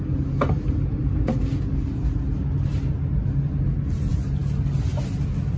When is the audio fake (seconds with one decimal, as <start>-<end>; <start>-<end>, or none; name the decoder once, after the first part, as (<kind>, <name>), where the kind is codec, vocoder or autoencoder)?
none